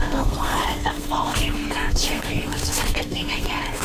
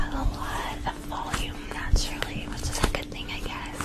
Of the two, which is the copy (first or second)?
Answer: first